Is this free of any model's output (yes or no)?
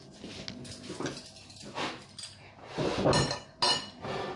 yes